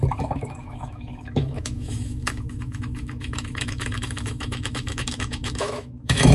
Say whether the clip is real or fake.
fake